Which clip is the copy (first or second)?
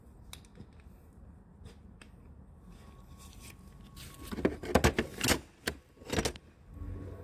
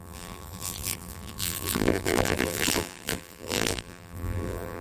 second